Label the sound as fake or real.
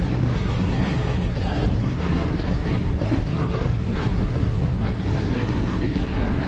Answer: fake